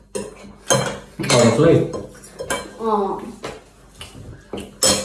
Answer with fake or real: real